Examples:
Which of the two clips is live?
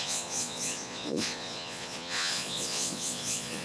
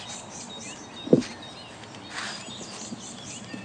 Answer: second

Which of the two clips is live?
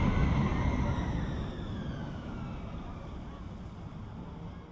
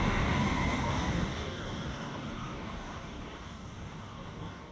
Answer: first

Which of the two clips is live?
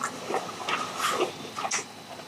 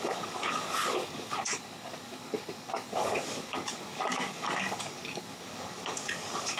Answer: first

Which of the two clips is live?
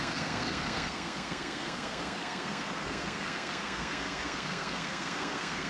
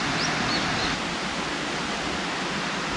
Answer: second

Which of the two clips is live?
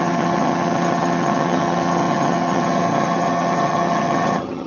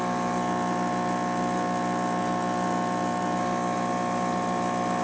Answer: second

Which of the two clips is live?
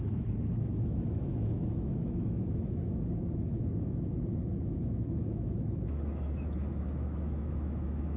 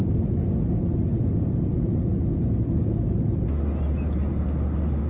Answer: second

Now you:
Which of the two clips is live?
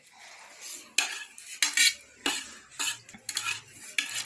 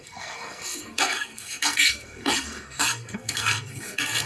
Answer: first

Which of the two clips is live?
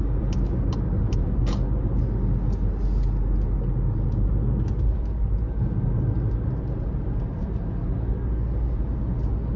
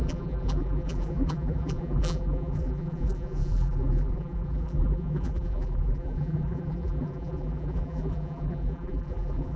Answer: first